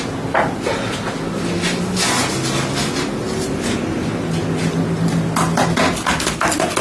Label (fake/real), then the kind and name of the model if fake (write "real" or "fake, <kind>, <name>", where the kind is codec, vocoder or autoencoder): real